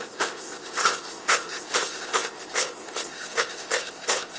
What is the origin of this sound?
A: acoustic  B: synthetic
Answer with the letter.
B